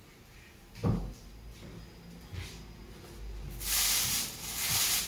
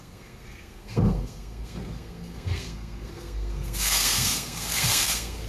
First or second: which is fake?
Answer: second